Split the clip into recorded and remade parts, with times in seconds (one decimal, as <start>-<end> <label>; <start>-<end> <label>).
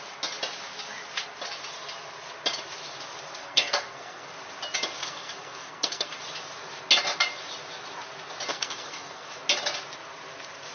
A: 0.0-3.4 recorded; 3.4-4.3 remade; 4.3-5.0 recorded; 5.0-6.2 remade; 6.2-8.5 recorded; 8.5-9.3 remade; 9.3-10.7 recorded